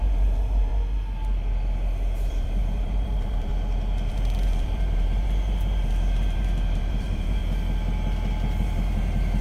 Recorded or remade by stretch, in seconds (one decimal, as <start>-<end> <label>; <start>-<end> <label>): 0.0-0.7 remade; 0.7-2.3 recorded; 2.3-3.5 remade; 3.5-4.1 recorded; 4.1-7.4 remade; 7.4-8.6 recorded; 8.6-9.4 remade